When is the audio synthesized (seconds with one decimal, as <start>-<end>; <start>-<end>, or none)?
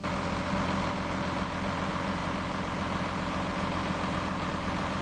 none